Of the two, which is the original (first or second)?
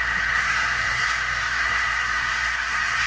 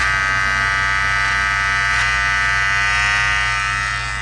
second